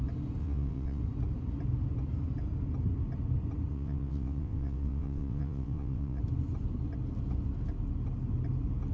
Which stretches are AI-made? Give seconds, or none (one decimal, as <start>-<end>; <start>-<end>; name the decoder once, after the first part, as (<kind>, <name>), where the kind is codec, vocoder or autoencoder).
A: 0.4-1.0 (vocoder, WaveNeXt); 3.7-6.2

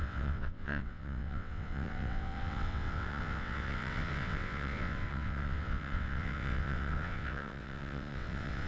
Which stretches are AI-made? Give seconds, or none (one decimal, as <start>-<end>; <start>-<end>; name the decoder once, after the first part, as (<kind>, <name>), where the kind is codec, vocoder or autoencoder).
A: 0.0-8.7 (vocoder, WaveNeXt)

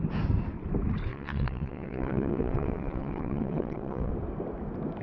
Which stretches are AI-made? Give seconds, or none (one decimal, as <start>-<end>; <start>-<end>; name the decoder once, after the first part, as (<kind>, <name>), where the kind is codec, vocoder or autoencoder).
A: 1.1-4.1 (vocoder, WaveNeXt)

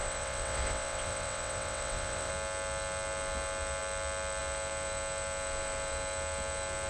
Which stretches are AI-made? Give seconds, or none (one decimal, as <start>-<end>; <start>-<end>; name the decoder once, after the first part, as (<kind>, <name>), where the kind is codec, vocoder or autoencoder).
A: 0.0-2.3 (vocoder, WaveNeXt)

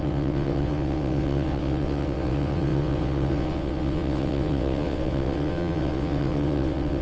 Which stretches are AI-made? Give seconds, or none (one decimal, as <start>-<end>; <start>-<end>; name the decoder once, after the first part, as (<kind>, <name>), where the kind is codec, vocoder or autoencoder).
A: 0.0-7.0 (vocoder, WaveNeXt)

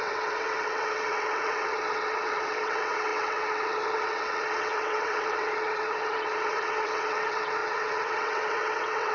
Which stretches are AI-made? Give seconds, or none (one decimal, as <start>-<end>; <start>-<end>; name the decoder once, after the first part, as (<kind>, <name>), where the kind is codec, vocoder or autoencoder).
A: 0.0-9.1 (vocoder, WaveNeXt)